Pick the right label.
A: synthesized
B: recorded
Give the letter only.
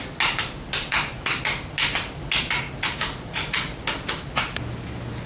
B